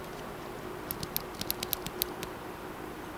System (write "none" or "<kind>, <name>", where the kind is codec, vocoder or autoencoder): none